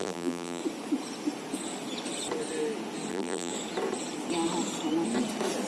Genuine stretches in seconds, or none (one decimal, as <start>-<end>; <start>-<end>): 0.6-3.1; 3.5-5.7